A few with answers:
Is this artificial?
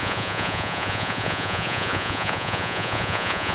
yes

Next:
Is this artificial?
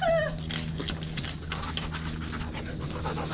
no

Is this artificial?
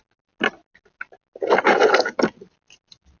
no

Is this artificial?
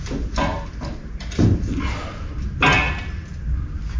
no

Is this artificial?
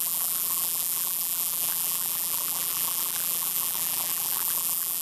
yes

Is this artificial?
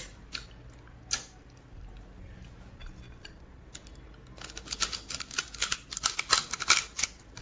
no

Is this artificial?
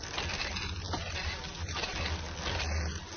no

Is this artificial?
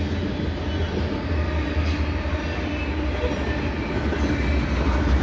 no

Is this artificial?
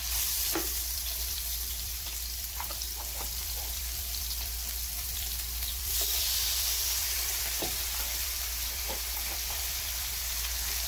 yes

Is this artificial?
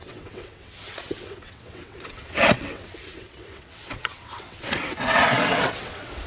yes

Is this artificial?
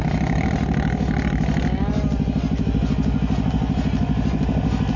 no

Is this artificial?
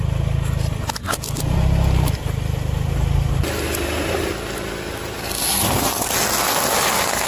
no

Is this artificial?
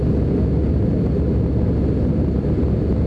no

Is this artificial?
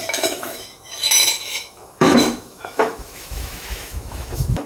yes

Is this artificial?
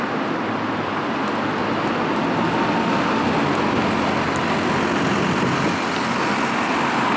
no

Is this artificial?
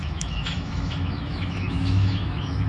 yes